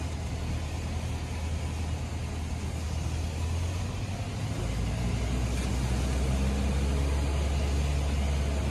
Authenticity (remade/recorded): recorded